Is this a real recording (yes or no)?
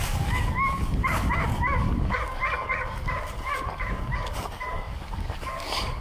no